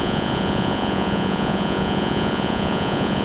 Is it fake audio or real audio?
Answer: fake